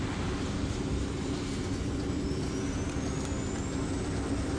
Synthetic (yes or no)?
no